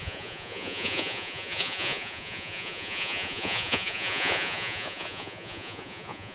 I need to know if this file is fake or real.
fake